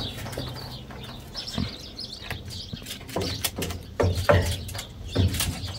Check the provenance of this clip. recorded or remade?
recorded